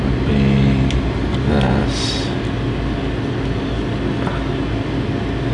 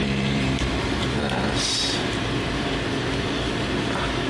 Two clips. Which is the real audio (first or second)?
first